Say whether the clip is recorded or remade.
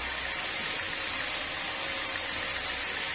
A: recorded